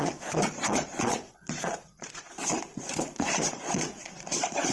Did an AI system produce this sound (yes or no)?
yes